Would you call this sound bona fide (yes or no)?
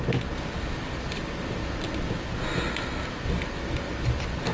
yes